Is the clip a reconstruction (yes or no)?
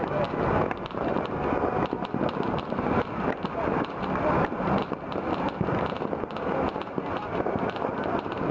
yes